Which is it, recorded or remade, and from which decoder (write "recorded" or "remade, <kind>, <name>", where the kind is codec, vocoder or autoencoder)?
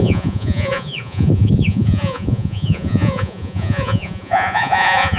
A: remade, vocoder, Vocos